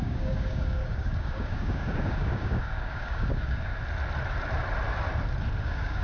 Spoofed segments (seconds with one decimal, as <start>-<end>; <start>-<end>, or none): 0.0-3.7; 5.6-6.0